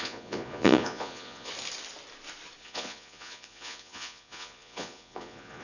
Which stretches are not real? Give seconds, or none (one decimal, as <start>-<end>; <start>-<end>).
0.0-1.5; 2.6-5.6